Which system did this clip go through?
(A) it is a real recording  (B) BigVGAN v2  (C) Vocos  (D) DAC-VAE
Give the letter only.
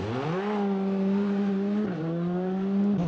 A